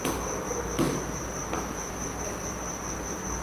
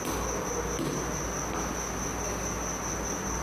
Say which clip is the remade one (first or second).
first